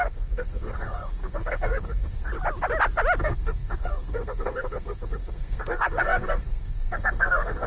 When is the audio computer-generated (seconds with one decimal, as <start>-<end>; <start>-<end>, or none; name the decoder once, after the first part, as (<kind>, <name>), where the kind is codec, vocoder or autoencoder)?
0.0-2.3 (codec, SNAC); 3.2-7.7